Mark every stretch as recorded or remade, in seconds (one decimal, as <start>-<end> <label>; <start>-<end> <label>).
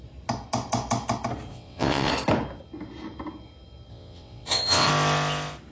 0.0-1.5 recorded; 1.5-2.1 remade; 2.1-3.9 recorded; 3.9-4.9 remade; 4.9-5.7 recorded